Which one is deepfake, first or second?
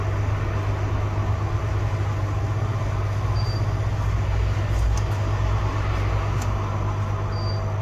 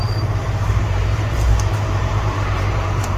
second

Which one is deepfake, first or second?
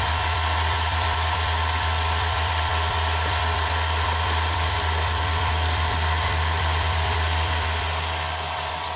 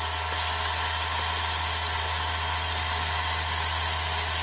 first